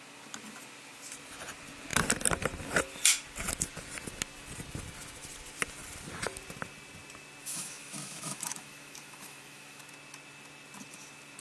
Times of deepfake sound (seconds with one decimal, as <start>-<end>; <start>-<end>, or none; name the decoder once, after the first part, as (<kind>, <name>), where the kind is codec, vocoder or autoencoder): 7.4-9.8 (autoencoder, DAC-VAE)